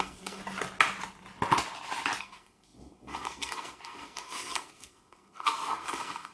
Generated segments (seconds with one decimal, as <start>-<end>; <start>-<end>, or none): 0.0-0.4; 2.2-6.3

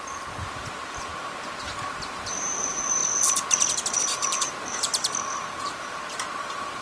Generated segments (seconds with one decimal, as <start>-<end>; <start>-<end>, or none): 0.0-1.1; 1.7-3.0; 4.0-4.9; 5.7-6.8